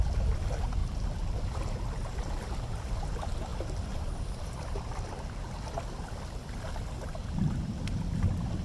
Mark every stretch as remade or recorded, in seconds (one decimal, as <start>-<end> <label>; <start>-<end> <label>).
0.0-3.5 recorded; 3.5-5.3 remade; 5.3-8.6 recorded